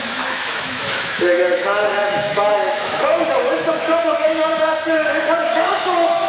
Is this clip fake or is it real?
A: fake